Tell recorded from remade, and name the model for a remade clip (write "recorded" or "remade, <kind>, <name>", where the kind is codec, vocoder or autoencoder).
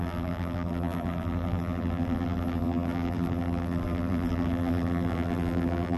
remade, vocoder, BigVGAN v2